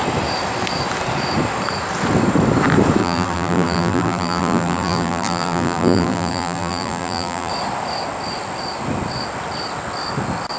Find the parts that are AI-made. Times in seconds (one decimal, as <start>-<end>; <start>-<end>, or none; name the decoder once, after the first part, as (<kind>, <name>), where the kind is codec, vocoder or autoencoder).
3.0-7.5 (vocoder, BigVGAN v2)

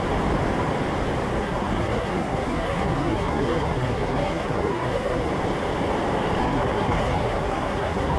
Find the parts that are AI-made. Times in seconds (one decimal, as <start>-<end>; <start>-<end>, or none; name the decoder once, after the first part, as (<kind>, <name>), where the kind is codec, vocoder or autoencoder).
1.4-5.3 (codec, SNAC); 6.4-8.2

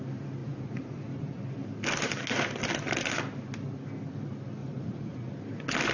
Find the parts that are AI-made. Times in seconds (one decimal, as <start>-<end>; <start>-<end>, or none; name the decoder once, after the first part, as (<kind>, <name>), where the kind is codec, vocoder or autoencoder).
0.4-1.4 (vocoder, Vocos); 4.6-5.3

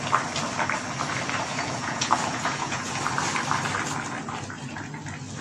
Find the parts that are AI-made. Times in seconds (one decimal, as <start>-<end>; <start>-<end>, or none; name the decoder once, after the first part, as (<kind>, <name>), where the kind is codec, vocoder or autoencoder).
1.5-3.0 (vocoder, Vocos)

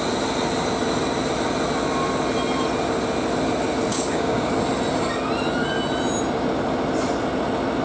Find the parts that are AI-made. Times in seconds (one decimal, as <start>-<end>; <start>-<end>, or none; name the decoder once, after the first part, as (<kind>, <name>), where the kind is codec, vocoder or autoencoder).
3.9-4.5 (codec, DAC)

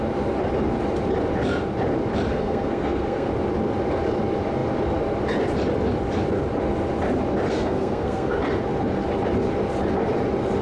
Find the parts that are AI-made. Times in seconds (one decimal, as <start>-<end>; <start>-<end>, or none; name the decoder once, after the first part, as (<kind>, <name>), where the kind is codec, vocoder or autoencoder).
2.3-3.3 (codec, SNAC); 7.5-8.3

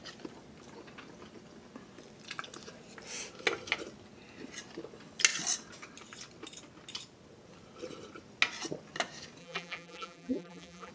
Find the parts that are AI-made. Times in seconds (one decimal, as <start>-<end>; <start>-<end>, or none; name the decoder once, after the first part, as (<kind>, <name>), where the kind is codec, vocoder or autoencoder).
9.4-10.9 (vocoder, BigVGAN v2)